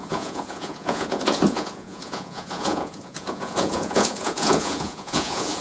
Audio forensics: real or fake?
fake